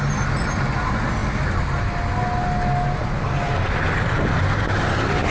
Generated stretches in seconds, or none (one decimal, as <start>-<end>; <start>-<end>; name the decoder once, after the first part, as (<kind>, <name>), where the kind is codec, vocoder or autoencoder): none